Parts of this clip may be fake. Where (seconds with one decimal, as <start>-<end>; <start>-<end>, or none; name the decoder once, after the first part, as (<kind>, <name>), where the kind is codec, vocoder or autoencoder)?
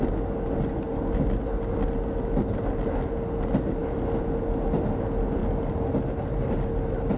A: none